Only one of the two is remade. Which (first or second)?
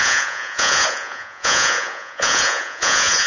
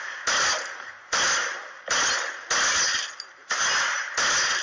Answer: first